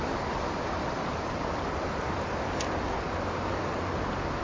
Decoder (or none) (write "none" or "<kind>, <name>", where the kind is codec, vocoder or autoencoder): none